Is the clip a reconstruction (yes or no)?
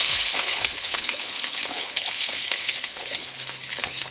yes